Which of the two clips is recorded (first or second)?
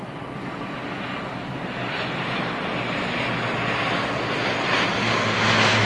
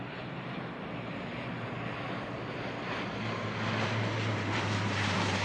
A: first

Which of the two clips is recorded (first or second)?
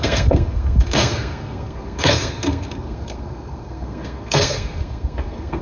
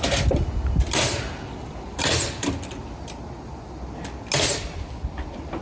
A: second